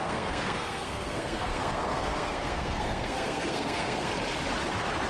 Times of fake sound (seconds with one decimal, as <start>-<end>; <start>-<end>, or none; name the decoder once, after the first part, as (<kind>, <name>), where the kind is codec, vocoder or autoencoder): 0.0-4.1 (codec, SNAC)